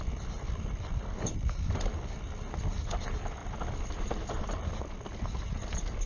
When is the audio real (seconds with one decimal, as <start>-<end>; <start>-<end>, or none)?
0.0-3.4; 5.4-6.1